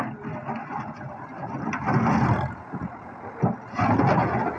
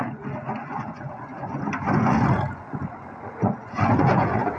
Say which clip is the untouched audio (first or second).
first